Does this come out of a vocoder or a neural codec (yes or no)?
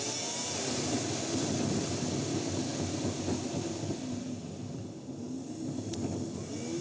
no